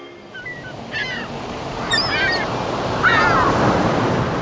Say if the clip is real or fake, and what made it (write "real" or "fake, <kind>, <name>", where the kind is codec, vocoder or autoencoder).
real